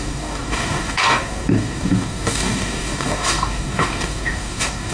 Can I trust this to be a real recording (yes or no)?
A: no